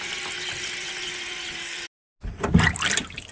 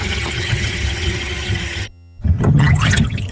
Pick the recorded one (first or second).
first